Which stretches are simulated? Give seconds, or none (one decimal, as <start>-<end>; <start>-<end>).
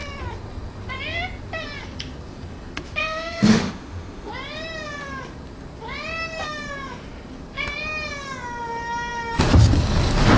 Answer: 3.0-4.3